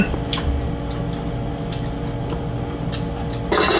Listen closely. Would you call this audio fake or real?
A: real